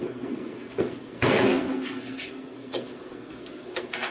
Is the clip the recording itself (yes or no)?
no